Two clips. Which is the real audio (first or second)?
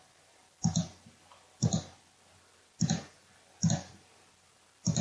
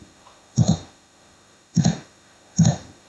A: first